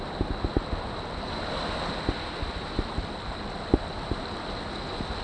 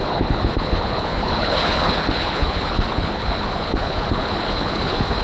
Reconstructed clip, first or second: second